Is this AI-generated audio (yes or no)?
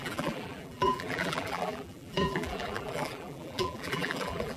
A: yes